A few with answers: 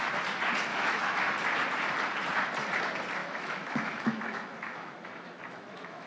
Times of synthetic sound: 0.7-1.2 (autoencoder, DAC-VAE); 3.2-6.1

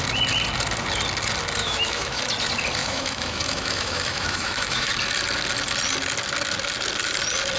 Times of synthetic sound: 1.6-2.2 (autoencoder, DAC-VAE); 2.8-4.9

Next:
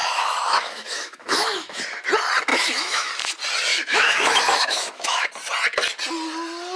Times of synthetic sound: 0.0-1.8 (autoencoder, DAC-VAE); 2.5-3.1; 3.7-5.3